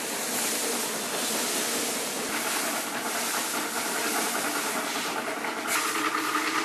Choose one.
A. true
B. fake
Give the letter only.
A